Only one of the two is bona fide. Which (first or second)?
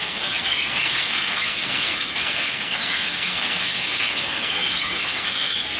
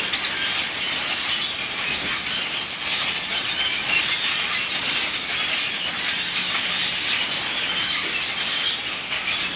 second